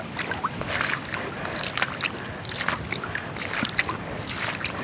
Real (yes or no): yes